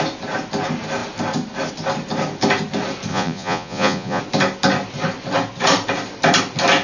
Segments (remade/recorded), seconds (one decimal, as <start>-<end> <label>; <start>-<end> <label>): 0.0-3.1 recorded; 3.1-4.2 remade; 4.2-6.8 recorded